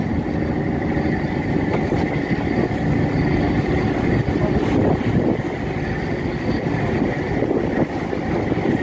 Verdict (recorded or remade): recorded